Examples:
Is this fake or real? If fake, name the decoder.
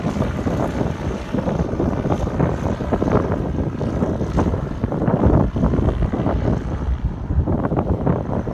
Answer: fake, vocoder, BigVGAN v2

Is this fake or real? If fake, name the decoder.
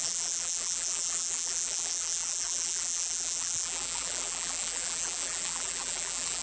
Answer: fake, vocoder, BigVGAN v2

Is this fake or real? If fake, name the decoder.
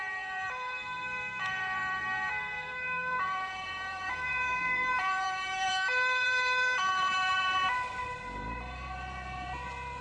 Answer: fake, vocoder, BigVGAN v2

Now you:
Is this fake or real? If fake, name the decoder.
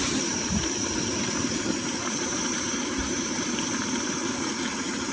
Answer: fake, vocoder, BigVGAN v2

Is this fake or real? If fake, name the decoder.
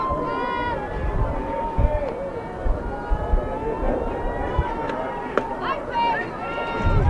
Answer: real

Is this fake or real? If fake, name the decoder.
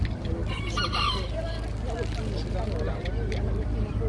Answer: real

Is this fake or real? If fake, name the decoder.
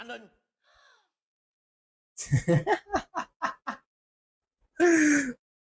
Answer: real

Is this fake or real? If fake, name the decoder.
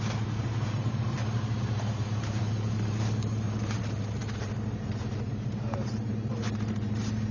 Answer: fake, vocoder, BigVGAN v2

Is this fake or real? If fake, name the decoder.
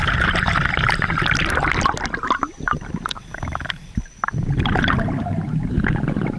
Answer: real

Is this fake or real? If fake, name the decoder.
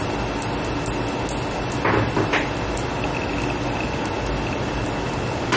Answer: real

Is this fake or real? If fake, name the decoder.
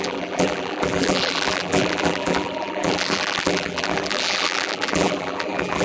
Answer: fake, vocoder, BigVGAN v2